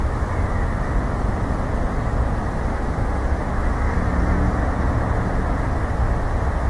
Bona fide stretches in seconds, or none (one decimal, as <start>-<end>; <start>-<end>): 0.0-2.7; 3.9-6.7